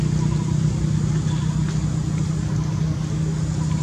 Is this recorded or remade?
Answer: recorded